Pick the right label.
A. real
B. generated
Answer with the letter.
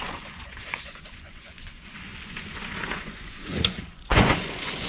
B